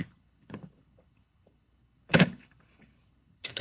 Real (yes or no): no